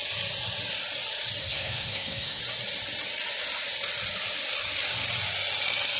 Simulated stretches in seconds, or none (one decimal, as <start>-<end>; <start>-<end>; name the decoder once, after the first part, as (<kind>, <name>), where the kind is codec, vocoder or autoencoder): 1.4-2.4 (codec, SNAC)